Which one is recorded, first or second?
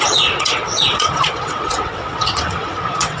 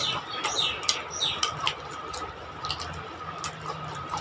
second